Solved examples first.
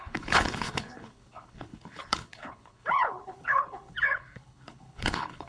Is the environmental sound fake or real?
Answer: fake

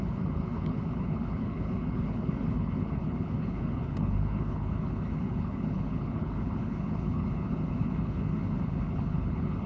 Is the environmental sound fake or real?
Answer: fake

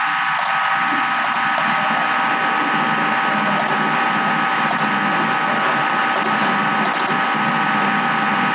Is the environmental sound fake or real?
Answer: real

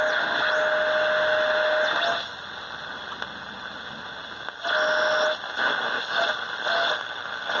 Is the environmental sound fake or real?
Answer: real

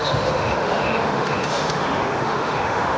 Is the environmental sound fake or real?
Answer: fake